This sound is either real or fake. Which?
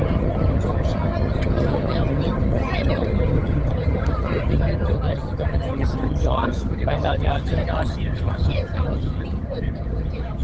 fake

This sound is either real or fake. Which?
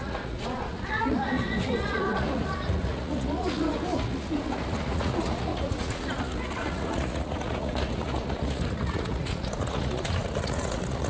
fake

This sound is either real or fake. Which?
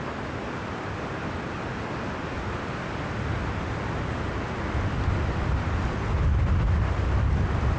real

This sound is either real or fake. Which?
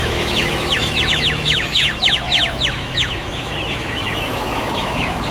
fake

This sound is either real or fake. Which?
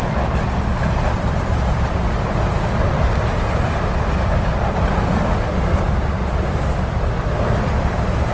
real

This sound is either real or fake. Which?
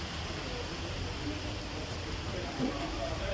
fake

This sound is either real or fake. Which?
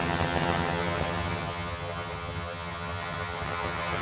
fake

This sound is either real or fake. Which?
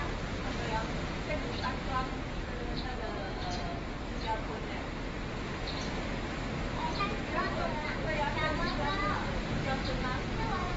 real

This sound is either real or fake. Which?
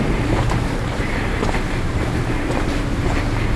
fake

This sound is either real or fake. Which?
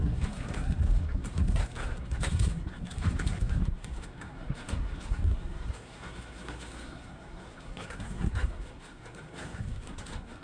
fake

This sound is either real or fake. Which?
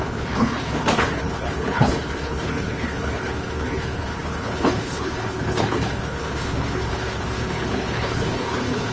fake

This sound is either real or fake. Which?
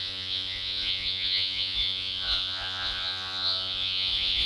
fake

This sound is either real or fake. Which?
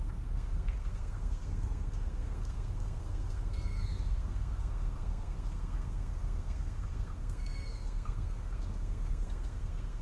fake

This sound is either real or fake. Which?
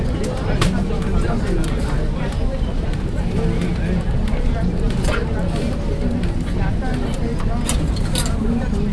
real